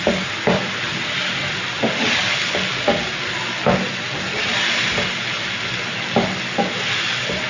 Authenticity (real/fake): real